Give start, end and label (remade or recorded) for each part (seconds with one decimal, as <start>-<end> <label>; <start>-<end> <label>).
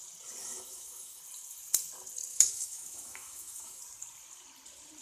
0.0-0.4 recorded; 0.4-1.2 remade; 1.2-2.3 recorded; 2.3-3.8 remade; 3.8-5.0 recorded